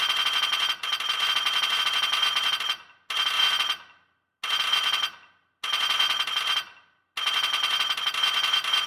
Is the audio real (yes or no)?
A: yes